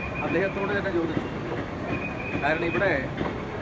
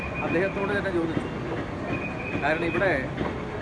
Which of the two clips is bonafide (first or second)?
second